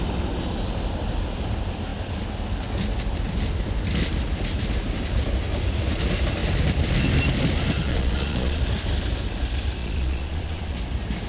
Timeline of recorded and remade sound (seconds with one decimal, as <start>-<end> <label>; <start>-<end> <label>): 0.0-7.8 recorded; 7.8-8.6 remade; 8.6-9.8 recorded; 9.8-10.8 remade; 10.8-11.3 recorded